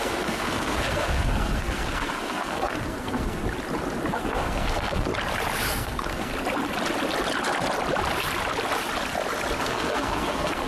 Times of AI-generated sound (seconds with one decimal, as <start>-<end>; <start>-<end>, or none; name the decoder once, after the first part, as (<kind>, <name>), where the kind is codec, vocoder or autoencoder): 0.0-3.4 (codec, SNAC); 4.1-5.1; 5.7-6.3; 9.6-10.7